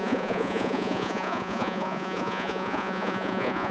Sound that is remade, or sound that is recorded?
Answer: remade